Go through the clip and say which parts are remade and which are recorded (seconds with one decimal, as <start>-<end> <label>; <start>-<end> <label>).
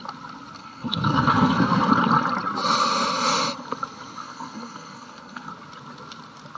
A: 0.0-0.6 recorded; 0.6-1.9 remade; 1.9-4.2 recorded; 4.2-5.5 remade; 5.5-6.6 recorded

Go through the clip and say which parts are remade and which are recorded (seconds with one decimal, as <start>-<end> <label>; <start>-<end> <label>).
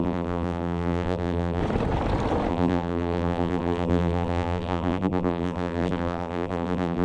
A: 0.0-1.6 remade; 1.6-2.5 recorded; 2.5-7.0 remade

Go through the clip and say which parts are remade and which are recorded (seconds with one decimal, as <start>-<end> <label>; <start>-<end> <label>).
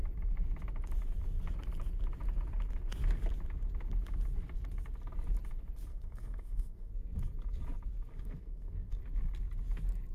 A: 0.0-5.9 recorded; 5.9-6.9 remade; 6.9-8.1 recorded; 8.1-9.0 remade; 9.0-10.1 recorded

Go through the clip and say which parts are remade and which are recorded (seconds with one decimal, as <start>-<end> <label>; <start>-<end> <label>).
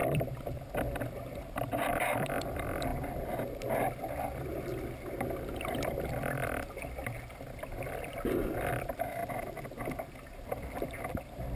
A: 0.0-2.9 remade; 2.9-5.6 recorded; 5.6-9.2 remade; 9.2-9.8 recorded; 9.8-11.6 remade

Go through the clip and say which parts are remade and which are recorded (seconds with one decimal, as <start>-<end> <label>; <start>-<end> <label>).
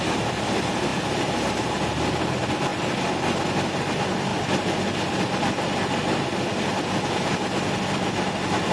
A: 0.0-2.7 recorded; 2.7-3.2 remade; 3.2-8.7 recorded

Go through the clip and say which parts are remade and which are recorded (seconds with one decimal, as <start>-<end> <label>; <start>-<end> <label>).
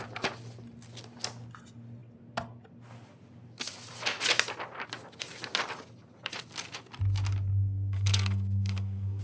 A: 0.0-7.5 recorded; 7.5-9.2 remade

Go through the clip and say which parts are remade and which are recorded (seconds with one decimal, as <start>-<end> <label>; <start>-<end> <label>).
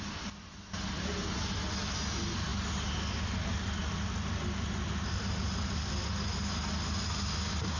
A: 0.0-7.8 recorded